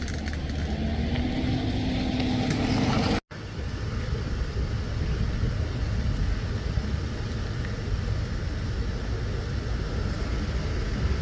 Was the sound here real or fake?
real